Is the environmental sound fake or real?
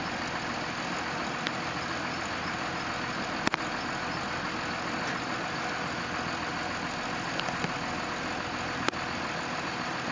real